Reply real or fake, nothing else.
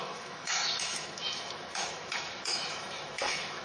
fake